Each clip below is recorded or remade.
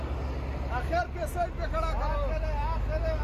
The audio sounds recorded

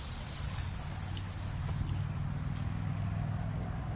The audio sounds recorded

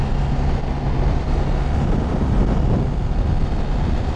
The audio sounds recorded